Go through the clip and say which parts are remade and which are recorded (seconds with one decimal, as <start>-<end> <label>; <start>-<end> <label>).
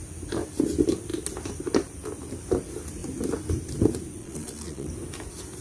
0.0-4.2 recorded; 4.2-4.9 remade; 4.9-5.6 recorded